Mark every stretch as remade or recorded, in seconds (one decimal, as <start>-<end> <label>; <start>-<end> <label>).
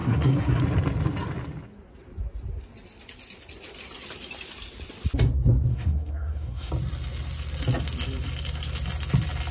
0.0-0.6 remade; 0.6-5.7 recorded; 5.7-6.7 remade; 6.7-9.5 recorded